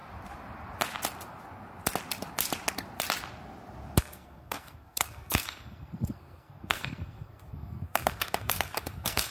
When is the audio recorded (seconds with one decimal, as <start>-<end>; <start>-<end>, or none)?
0.0-4.0